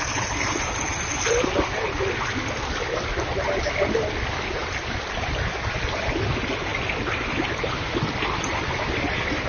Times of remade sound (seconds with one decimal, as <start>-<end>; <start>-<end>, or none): none